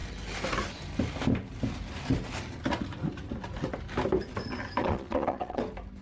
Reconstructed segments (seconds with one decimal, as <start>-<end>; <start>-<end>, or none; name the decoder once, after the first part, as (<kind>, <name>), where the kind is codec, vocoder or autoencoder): 4.8-5.6 (vocoder, Vocos)